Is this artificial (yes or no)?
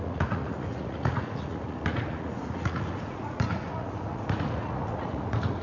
yes